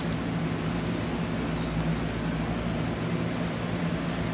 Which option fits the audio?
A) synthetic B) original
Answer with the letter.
B